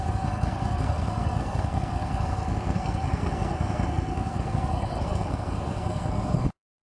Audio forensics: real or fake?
fake